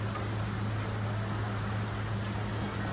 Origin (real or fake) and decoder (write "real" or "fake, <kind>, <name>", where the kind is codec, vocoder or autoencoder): real